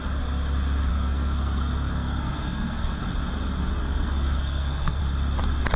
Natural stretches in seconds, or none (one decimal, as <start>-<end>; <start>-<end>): 0.0-0.9; 3.0-3.8; 5.0-5.8